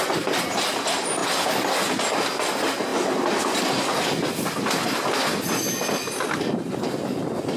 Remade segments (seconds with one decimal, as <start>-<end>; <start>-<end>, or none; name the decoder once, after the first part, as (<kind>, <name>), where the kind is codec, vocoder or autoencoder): none